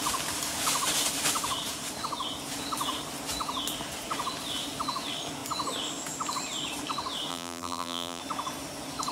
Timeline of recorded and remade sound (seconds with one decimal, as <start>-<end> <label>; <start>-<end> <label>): 0.0-7.3 recorded; 7.3-8.2 remade; 8.2-9.1 recorded